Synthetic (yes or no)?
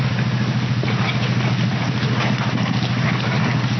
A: no